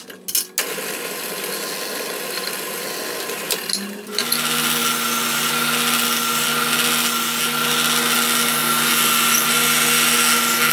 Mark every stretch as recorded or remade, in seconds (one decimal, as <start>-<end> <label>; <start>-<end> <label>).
0.0-10.7 recorded